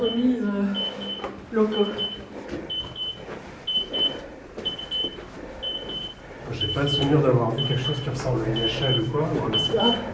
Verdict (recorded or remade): recorded